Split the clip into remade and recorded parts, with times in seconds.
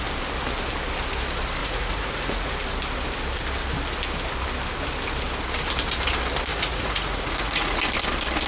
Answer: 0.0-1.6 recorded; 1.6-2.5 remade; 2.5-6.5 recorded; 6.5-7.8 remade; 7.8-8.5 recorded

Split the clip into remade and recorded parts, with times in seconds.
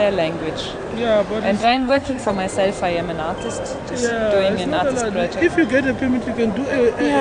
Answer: 0.0-1.6 recorded; 1.6-2.3 remade; 2.3-7.2 recorded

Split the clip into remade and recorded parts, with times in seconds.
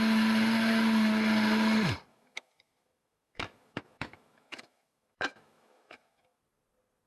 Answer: 0.0-2.1 recorded; 2.1-6.4 remade; 6.4-7.1 recorded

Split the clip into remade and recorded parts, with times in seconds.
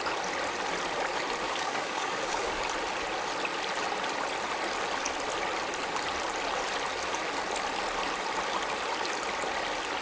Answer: 0.0-1.4 recorded; 1.4-2.6 remade; 2.6-10.0 recorded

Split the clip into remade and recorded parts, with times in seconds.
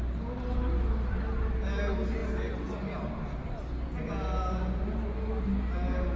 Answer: 0.0-6.2 recorded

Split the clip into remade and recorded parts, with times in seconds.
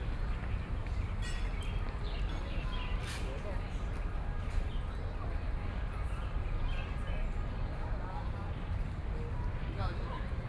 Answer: 0.0-10.5 recorded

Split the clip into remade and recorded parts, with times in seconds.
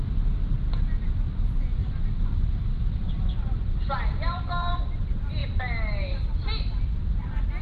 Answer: 0.0-1.8 recorded; 1.8-4.8 remade; 4.8-7.6 recorded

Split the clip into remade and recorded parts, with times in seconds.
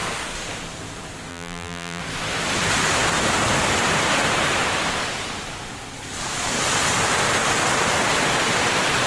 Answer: 0.0-1.3 recorded; 1.3-2.0 remade; 2.0-9.1 recorded